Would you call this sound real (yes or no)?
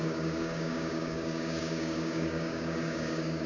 no